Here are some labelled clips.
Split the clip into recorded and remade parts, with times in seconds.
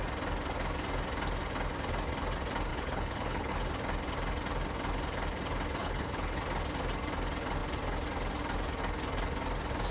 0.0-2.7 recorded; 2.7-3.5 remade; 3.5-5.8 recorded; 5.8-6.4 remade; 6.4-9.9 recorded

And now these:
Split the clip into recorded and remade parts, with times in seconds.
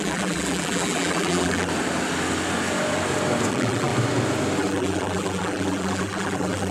0.0-1.7 remade; 1.7-3.5 recorded; 3.5-3.9 remade; 3.9-4.6 recorded; 4.6-6.7 remade